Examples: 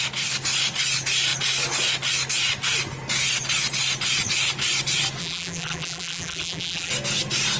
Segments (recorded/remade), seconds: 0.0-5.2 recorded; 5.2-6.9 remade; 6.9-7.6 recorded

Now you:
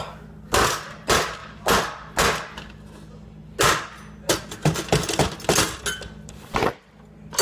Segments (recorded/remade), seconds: 0.0-7.4 recorded

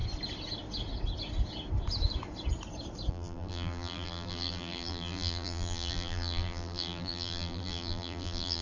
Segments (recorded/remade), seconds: 0.0-3.1 recorded; 3.1-8.6 remade

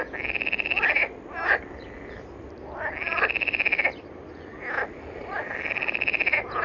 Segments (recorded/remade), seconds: 0.0-6.6 recorded

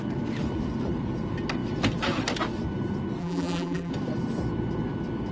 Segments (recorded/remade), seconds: 0.0-3.2 recorded; 3.2-3.9 remade; 3.9-5.3 recorded

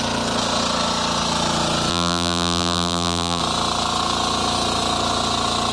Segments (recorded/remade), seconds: 0.0-1.9 recorded; 1.9-3.4 remade; 3.4-5.7 recorded

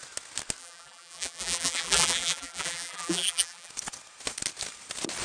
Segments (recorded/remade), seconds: 0.0-0.6 recorded; 0.6-3.7 remade; 3.7-5.2 recorded

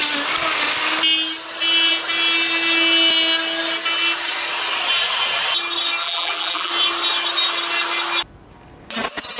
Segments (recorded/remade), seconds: 0.0-6.0 recorded; 6.0-6.7 remade; 6.7-9.4 recorded